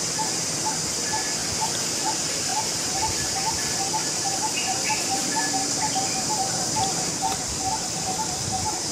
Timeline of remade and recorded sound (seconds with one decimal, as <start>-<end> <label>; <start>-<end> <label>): 0.0-2.5 recorded; 2.5-3.3 remade; 3.3-4.0 recorded; 4.0-8.9 remade